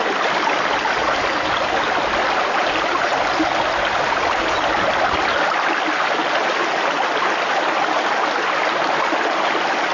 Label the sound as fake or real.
real